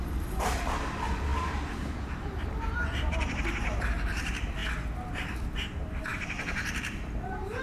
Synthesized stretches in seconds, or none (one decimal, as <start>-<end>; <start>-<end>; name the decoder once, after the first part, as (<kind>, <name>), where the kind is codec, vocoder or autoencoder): 0.0-4.6 (vocoder, BigVGAN v2); 5.1-7.6